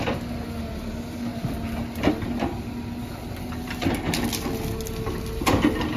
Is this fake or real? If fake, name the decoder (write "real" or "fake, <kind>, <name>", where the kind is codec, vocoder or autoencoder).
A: real